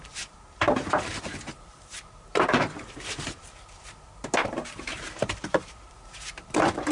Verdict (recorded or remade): remade